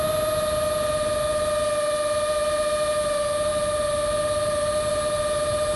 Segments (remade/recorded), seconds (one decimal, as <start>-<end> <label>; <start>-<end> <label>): 0.0-5.8 recorded